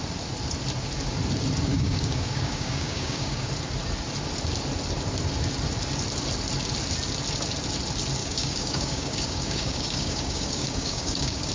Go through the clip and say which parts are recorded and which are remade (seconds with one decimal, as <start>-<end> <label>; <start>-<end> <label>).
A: 0.0-1.7 recorded; 1.7-3.5 remade; 3.5-8.2 recorded; 8.2-11.5 remade